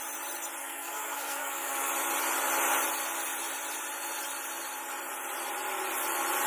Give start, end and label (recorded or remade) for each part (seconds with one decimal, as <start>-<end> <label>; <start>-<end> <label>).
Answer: 0.0-0.6 recorded; 0.6-1.9 remade; 1.9-6.5 recorded